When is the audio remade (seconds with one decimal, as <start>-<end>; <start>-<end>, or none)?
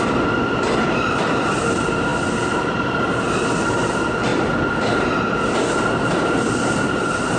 none